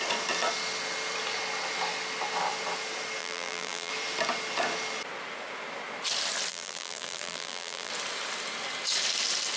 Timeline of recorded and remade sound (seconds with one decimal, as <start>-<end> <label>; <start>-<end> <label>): 0.0-3.2 recorded; 3.2-3.9 remade; 3.9-6.5 recorded; 6.5-7.9 remade; 7.9-9.6 recorded